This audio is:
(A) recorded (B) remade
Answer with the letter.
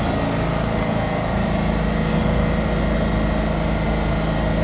A